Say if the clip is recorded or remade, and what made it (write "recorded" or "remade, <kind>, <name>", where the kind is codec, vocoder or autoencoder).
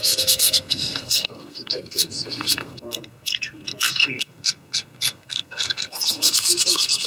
remade, codec, SNAC